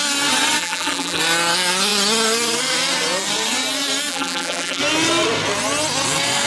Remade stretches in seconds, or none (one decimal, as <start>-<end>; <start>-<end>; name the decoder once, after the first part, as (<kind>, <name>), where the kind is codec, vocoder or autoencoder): 0.6-1.2 (vocoder, BigVGAN v2); 4.1-4.8